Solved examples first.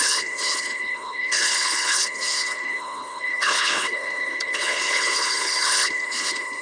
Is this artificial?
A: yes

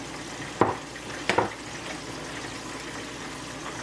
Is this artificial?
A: no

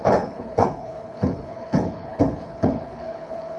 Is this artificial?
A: yes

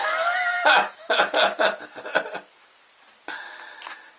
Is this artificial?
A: no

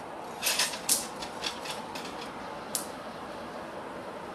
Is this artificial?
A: no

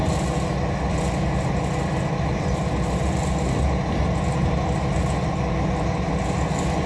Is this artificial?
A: no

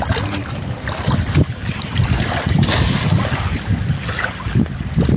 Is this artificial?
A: no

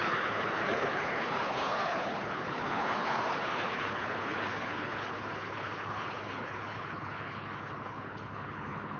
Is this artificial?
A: yes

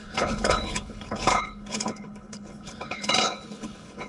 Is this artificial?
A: yes